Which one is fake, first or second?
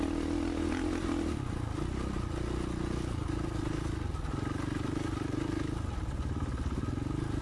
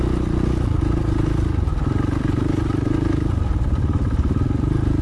second